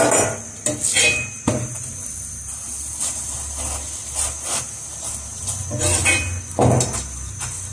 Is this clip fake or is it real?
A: real